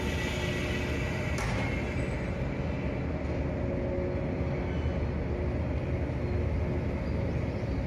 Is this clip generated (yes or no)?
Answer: no